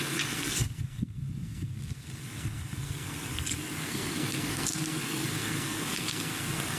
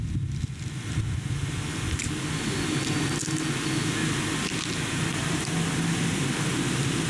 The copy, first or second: first